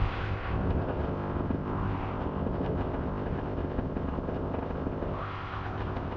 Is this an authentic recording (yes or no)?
no